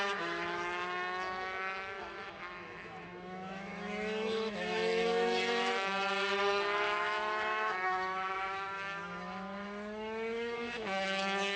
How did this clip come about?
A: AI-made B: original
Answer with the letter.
A